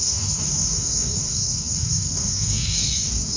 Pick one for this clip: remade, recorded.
remade